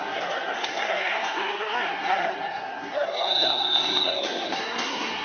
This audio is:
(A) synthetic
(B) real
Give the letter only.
A